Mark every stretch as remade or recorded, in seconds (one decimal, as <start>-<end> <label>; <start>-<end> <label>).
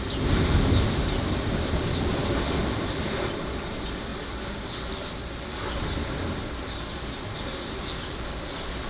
0.0-4.1 remade; 4.1-7.8 recorded; 7.8-8.9 remade